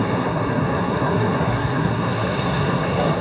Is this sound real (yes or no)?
no